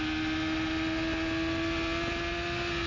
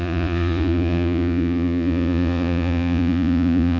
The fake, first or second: second